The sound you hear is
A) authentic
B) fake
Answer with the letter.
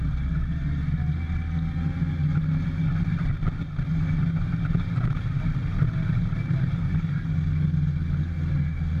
A